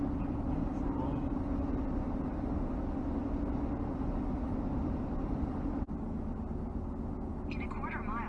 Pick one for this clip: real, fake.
real